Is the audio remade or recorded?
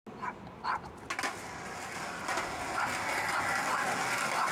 recorded